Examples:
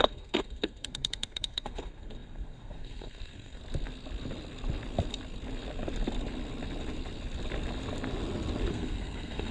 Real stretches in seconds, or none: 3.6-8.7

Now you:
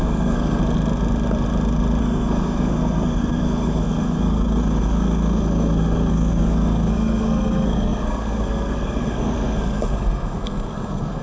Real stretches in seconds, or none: 0.6-2.0